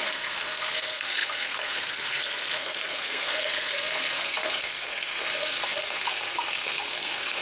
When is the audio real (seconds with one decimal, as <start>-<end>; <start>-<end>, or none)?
none